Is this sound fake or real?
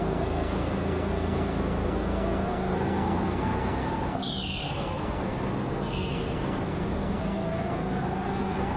fake